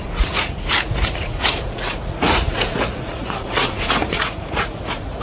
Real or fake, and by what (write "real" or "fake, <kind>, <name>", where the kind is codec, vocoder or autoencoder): fake, vocoder, Vocos